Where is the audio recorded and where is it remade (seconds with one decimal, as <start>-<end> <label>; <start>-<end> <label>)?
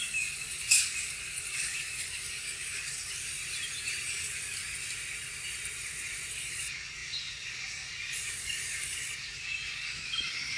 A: 0.0-3.4 remade; 3.4-4.1 recorded; 4.1-4.6 remade; 4.6-6.3 recorded; 6.3-10.6 remade